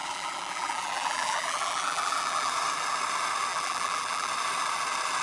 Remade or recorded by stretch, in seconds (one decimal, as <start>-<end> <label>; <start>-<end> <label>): 0.0-2.5 remade; 2.5-3.5 recorded; 3.5-4.3 remade; 4.3-5.2 recorded